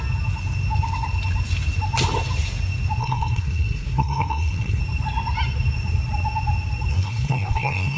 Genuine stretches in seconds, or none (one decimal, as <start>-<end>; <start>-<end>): 0.0-3.0; 4.8-6.9

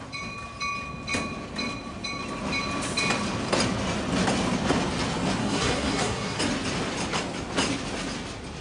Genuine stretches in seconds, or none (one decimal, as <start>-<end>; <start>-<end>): 0.0-5.4; 6.4-8.6

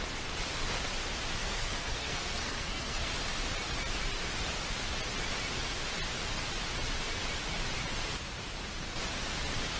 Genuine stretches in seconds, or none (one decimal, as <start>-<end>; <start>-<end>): 0.0-1.4; 3.1-9.8

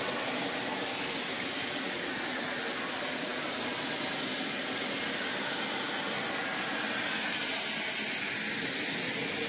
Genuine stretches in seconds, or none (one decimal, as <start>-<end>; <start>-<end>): 0.0-9.5

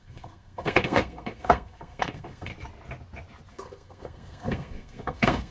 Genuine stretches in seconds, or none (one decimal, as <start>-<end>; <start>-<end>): 2.5-3.5